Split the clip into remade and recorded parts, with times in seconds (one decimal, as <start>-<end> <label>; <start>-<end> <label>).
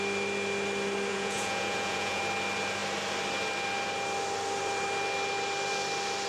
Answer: 0.0-1.1 recorded; 1.1-2.2 remade; 2.2-6.3 recorded